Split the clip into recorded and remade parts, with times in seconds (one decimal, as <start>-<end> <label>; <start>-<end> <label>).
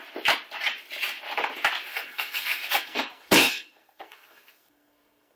0.0-1.9 recorded; 1.9-5.4 remade